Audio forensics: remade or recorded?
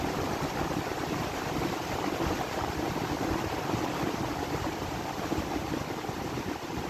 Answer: recorded